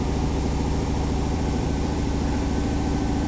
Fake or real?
fake